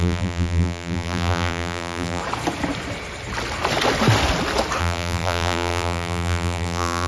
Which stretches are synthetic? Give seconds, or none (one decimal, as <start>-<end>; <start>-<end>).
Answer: 0.0-2.2; 4.8-7.1